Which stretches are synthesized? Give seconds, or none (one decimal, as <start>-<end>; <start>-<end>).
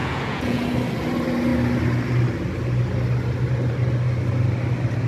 0.0-0.6